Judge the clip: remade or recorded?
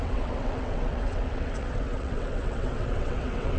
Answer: remade